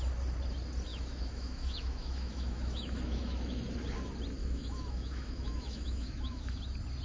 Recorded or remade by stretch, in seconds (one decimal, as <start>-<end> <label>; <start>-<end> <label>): 0.0-0.9 recorded; 0.9-3.6 remade; 3.6-4.4 recorded; 4.4-6.6 remade; 6.6-7.0 recorded